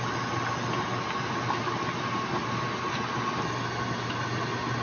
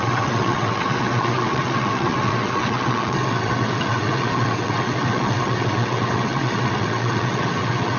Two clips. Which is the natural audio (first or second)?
first